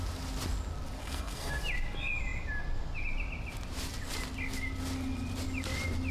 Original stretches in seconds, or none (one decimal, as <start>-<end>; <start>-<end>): 0.0-1.0; 1.6-6.1